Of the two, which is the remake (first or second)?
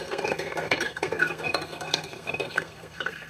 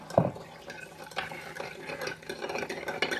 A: first